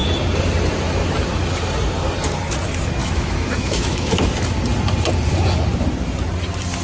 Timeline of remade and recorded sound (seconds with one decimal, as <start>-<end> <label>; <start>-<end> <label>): 0.0-3.0 recorded; 3.0-4.3 remade; 4.3-6.8 recorded